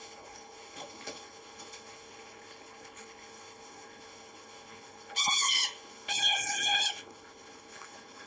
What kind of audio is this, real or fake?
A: fake